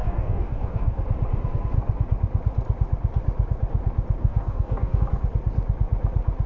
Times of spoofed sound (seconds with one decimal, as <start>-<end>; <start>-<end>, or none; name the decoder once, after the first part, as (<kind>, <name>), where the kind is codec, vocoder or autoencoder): 0.0-1.0 (codec, DAC); 4.2-5.0

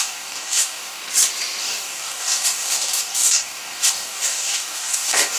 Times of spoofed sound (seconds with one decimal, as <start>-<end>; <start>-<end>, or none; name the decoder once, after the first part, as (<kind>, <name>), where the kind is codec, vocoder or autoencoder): 0.0-1.0 (codec, DAC); 1.6-5.4